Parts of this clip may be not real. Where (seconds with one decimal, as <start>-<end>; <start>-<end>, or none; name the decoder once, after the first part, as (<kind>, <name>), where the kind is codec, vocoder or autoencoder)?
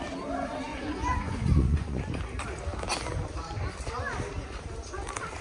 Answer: 0.7-2.0 (vocoder, Vocos)